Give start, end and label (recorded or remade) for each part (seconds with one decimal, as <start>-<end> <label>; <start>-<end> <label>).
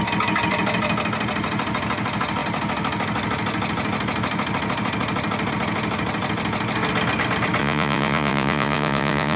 0.0-7.6 recorded; 7.6-9.4 remade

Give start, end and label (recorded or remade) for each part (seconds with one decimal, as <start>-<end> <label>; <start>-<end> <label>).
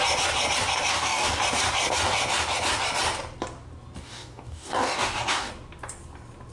0.0-0.9 recorded; 0.9-1.4 remade; 1.4-4.0 recorded; 4.0-5.5 remade; 5.5-6.5 recorded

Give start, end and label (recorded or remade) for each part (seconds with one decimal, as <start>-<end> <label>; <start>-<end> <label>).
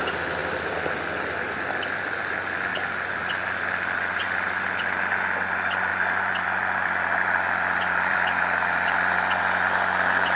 0.0-0.4 recorded; 0.4-2.2 remade; 2.2-2.7 recorded; 2.7-3.2 remade; 3.2-5.9 recorded; 5.9-9.4 remade; 9.4-10.4 recorded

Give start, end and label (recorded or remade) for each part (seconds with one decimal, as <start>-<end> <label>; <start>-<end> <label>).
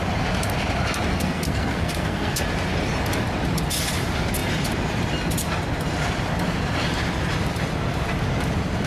0.0-1.1 recorded; 1.1-2.4 remade; 2.4-8.9 recorded